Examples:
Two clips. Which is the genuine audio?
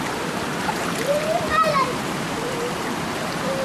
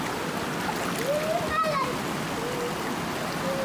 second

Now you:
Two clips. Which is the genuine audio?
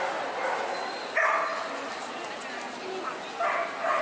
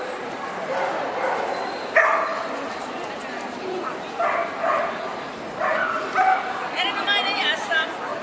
first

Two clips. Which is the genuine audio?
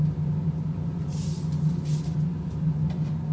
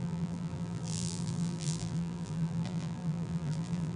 first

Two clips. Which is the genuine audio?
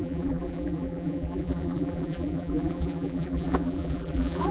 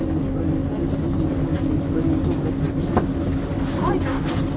second